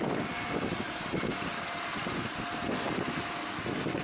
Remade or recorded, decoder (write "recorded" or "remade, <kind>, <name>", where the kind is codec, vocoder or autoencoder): recorded